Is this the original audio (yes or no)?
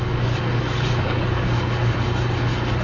no